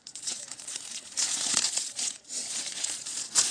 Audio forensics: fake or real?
fake